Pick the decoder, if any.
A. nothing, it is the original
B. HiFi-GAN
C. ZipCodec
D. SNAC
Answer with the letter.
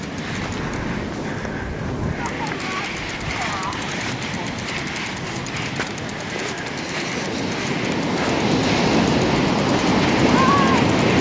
A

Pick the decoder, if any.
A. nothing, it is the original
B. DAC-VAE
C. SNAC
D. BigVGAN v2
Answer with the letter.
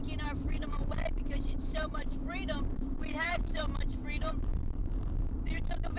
D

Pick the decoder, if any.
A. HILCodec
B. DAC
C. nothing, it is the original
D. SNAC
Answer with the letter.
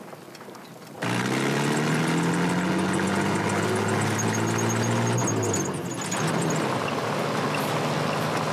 C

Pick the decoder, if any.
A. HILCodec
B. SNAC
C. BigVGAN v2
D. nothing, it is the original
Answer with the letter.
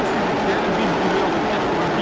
D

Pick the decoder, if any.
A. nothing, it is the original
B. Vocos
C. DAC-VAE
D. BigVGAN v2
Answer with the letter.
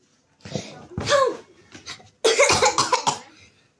A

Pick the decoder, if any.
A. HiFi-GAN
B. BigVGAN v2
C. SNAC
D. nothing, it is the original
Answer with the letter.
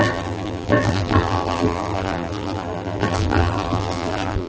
B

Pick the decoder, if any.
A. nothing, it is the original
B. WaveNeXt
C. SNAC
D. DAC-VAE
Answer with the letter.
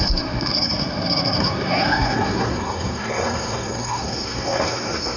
C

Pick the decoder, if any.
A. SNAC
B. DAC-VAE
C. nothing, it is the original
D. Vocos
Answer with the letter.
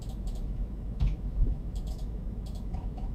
B